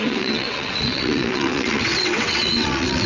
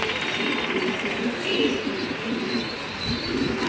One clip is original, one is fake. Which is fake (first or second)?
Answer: first